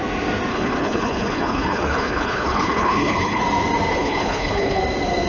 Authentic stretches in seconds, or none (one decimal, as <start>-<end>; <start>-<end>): 0.0-0.5; 3.4-3.9; 4.8-5.3